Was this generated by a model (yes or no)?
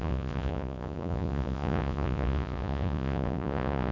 yes